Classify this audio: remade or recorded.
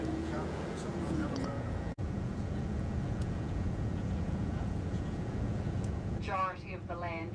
remade